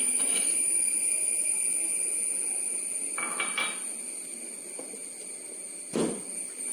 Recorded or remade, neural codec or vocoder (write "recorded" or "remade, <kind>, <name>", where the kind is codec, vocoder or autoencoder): recorded